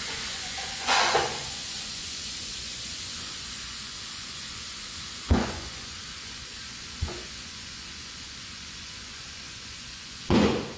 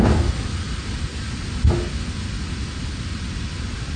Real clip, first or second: second